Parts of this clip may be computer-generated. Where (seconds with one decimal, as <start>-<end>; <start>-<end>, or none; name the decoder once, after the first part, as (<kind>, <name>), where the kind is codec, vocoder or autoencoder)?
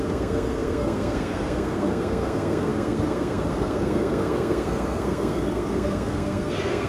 0.0-6.9 (codec, SNAC)